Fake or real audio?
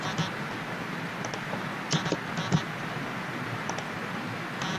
real